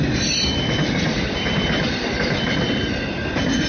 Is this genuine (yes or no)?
yes